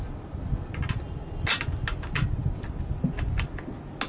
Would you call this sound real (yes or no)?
yes